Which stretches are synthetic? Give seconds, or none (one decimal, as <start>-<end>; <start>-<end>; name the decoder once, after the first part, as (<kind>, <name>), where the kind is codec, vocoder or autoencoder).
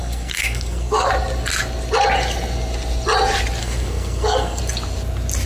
0.0-1.1 (codec, SNAC); 3.6-4.6